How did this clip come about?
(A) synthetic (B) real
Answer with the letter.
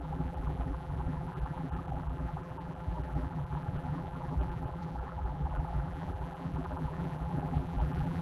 A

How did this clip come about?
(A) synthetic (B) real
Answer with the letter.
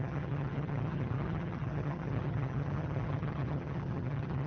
A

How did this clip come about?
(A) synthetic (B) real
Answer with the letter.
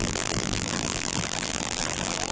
A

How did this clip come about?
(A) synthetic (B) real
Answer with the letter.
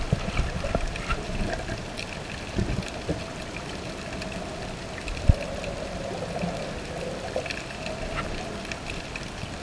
B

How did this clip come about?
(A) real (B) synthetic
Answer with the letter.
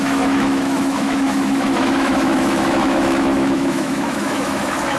B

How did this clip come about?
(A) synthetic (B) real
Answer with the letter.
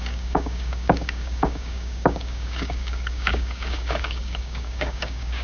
A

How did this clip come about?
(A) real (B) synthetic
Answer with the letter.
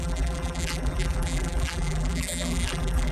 B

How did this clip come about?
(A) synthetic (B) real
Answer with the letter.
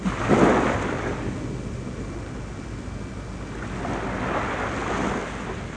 B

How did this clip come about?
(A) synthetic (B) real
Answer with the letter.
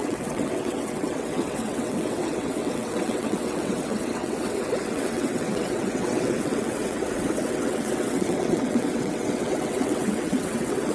A